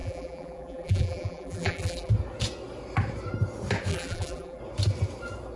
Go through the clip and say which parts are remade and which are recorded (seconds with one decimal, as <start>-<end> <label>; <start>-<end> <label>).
0.0-2.1 remade; 2.1-3.9 recorded; 3.9-4.6 remade; 4.6-5.6 recorded